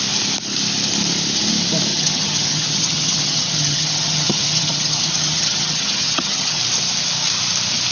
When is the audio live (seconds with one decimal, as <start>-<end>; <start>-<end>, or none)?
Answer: 0.0-1.9; 6.6-7.9